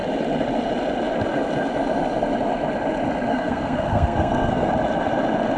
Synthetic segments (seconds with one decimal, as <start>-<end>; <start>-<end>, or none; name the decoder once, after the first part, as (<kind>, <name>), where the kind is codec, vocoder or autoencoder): 3.3-4.7 (codec, SNAC)